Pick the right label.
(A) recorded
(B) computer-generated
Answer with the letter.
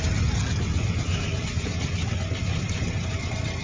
A